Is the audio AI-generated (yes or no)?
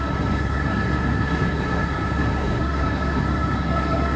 yes